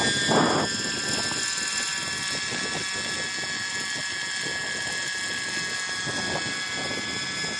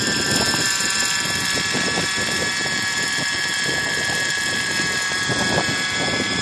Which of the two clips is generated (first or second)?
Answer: second